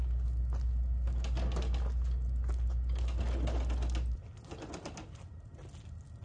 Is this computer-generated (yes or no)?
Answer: no